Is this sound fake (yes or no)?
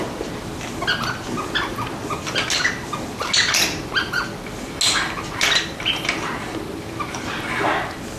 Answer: no